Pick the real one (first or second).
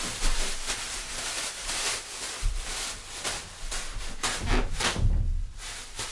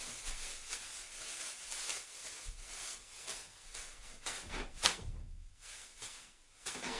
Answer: first